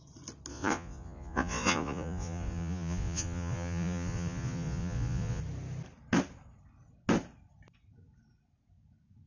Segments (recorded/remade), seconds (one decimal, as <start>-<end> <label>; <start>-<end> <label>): 0.0-0.5 recorded; 0.5-5.4 remade; 5.4-9.3 recorded